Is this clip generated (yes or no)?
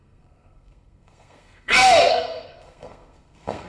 yes